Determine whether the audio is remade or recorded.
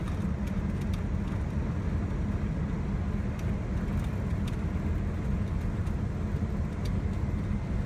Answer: recorded